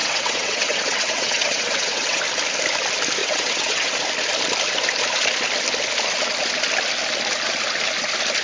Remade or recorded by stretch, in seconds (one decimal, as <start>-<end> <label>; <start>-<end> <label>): 0.0-2.2 remade; 2.2-3.2 recorded; 3.2-3.9 remade; 3.9-8.4 recorded